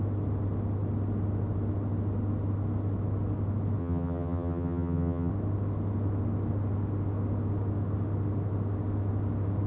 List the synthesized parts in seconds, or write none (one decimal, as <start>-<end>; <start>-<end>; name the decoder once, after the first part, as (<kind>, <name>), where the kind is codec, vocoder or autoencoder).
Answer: 3.8-5.3 (vocoder, HiFi-GAN)